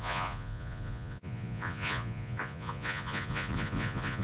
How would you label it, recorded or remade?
remade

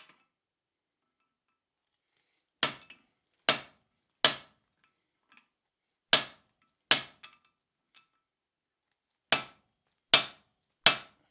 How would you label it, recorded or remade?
recorded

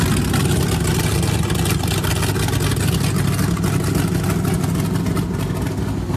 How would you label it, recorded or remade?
recorded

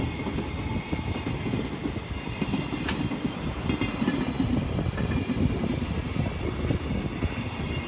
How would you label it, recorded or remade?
recorded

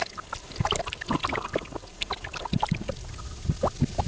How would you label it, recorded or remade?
recorded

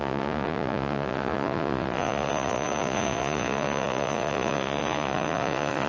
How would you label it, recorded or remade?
remade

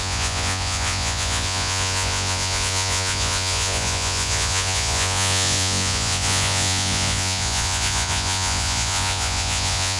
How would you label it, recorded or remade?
remade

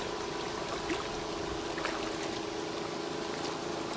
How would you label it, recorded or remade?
recorded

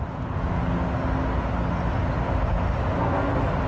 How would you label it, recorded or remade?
recorded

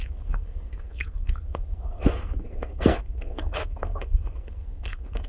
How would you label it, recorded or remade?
remade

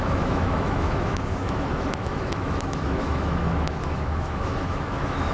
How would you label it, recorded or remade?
remade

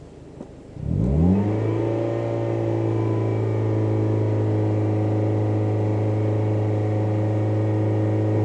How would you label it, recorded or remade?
recorded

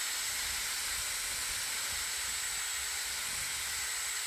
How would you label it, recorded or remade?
recorded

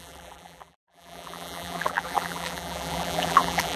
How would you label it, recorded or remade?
remade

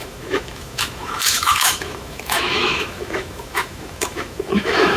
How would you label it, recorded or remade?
remade